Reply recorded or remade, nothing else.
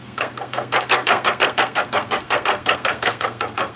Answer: remade